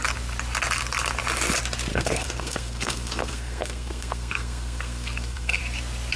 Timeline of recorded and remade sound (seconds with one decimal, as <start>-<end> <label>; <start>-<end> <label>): 0.0-1.9 recorded; 1.9-5.6 remade; 5.6-6.2 recorded